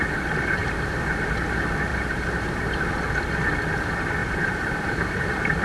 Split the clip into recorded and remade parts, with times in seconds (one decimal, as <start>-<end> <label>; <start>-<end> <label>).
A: 0.0-0.6 recorded; 0.6-1.3 remade; 1.3-1.9 recorded; 1.9-3.0 remade; 3.0-4.2 recorded; 4.2-5.6 remade